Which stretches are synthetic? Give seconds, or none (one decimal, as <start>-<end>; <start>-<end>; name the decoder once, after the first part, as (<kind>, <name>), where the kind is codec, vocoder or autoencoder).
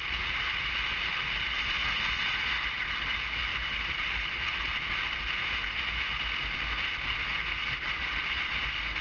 none